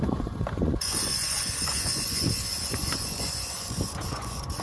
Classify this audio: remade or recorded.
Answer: remade